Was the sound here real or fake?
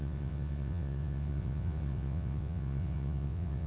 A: fake